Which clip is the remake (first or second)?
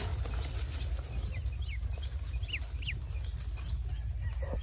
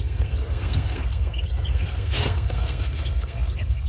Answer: second